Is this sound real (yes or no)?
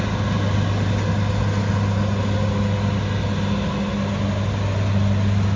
yes